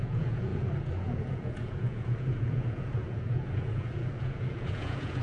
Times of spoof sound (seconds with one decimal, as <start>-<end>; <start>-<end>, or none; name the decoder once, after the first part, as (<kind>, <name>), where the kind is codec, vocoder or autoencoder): 0.0-5.2 (vocoder, Vocos)